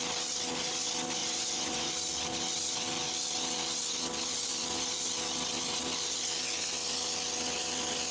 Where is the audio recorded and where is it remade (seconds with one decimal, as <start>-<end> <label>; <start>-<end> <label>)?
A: 0.0-1.2 recorded; 1.2-1.9 remade; 1.9-8.1 recorded